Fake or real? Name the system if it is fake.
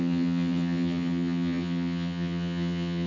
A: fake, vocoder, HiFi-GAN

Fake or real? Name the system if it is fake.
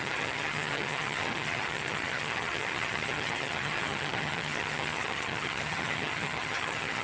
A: fake, vocoder, HiFi-GAN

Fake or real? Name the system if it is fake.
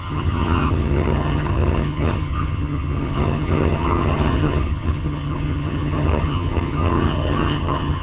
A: fake, vocoder, HiFi-GAN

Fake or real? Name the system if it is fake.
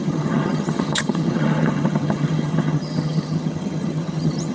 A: fake, vocoder, HiFi-GAN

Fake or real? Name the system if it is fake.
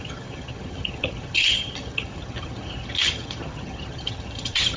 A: fake, vocoder, HiFi-GAN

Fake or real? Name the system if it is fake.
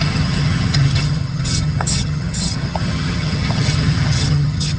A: fake, vocoder, HiFi-GAN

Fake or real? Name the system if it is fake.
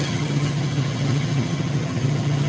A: fake, vocoder, HiFi-GAN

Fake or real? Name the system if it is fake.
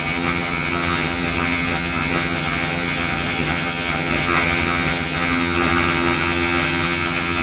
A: fake, vocoder, HiFi-GAN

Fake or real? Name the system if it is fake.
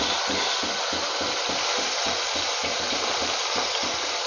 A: real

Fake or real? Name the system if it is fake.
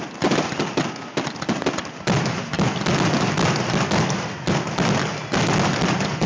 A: real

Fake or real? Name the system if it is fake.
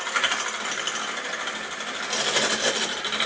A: real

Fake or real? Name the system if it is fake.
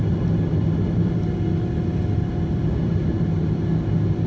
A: real